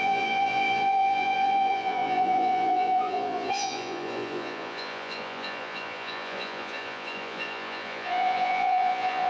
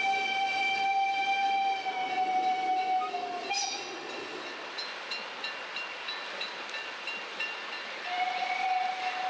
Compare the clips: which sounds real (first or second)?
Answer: second